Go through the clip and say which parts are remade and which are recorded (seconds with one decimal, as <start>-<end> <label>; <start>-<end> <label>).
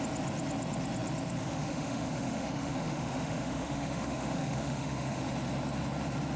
0.0-1.4 recorded; 1.4-5.2 remade; 5.2-6.4 recorded